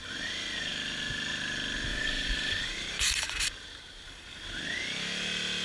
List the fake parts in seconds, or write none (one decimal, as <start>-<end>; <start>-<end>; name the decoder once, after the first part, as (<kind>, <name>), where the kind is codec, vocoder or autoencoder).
1.9-3.5 (vocoder, BigVGAN v2)

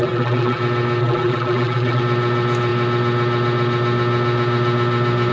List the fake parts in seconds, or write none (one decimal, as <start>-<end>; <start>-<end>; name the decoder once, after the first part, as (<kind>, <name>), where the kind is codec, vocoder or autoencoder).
0.0-0.6 (vocoder, BigVGAN v2); 1.0-2.0

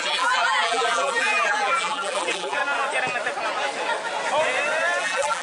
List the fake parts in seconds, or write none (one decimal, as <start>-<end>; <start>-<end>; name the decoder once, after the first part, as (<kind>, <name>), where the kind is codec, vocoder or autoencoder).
0.0-2.6 (vocoder, BigVGAN v2); 5.0-5.4

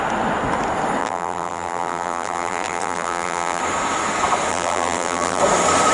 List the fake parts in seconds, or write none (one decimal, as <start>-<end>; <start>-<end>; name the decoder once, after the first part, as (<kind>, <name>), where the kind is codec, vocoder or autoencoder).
1.0-3.6 (vocoder, BigVGAN v2); 4.5-5.4